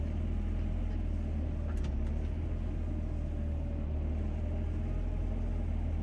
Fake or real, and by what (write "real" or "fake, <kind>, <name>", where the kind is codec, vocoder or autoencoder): real